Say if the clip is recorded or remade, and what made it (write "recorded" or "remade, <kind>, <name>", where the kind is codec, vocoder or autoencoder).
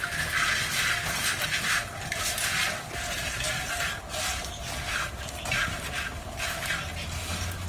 recorded